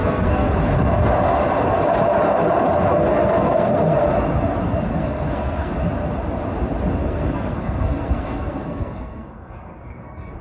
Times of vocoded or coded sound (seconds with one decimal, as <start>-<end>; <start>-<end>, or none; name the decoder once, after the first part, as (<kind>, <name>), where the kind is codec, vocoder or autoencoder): 0.0-0.5 (codec, SNAC); 3.1-4.1; 4.9-5.7; 7.0-10.4